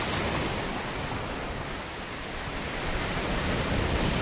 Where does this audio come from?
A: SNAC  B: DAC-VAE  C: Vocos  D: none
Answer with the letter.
D